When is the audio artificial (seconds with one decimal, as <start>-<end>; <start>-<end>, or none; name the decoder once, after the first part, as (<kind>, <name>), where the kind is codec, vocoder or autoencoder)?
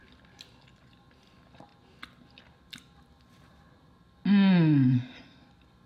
none